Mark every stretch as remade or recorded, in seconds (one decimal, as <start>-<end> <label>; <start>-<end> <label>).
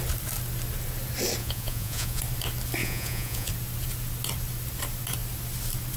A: 0.0-1.4 recorded; 1.4-2.2 remade; 2.2-2.8 recorded; 2.8-3.5 remade; 3.5-6.0 recorded